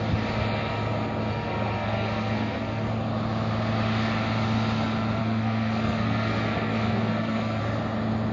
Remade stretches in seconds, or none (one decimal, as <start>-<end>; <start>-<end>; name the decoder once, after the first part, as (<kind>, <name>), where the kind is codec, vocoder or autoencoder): 1.3-2.9 (codec, SNAC); 5.2-7.6